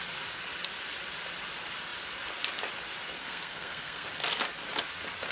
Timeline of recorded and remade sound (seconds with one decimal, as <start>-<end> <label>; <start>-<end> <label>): 0.0-3.2 recorded; 3.2-4.1 remade; 4.1-5.3 recorded

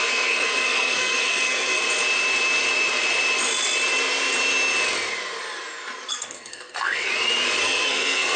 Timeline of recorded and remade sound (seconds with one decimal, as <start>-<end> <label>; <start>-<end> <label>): 0.0-1.8 remade; 1.8-6.1 recorded; 6.1-7.1 remade; 7.1-7.6 recorded; 7.6-8.4 remade

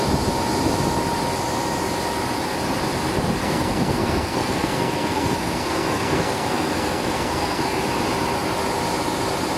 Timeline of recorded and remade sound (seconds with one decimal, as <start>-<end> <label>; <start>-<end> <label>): 0.0-3.4 recorded; 3.4-7.8 remade; 7.8-9.6 recorded

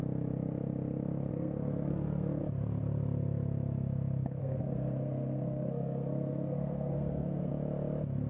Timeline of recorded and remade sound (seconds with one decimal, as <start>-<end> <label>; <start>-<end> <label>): 0.0-1.3 recorded; 1.3-2.4 remade; 2.4-4.4 recorded; 4.4-7.5 remade; 7.5-8.3 recorded